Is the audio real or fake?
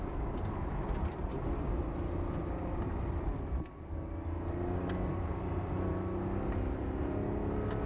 real